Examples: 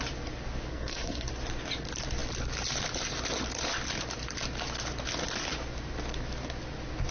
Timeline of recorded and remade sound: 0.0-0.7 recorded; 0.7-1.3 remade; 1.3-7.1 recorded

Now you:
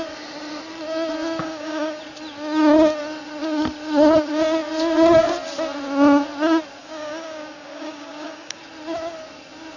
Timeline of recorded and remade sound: 0.0-1.4 recorded; 1.4-2.0 remade; 2.0-6.8 recorded; 6.8-8.6 remade; 8.6-9.8 recorded

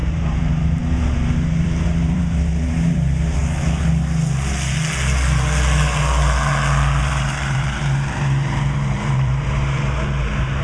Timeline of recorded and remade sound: 0.0-3.4 remade; 3.4-7.0 recorded; 7.0-10.6 remade

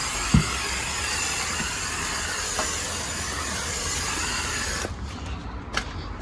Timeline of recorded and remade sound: 0.0-6.2 recorded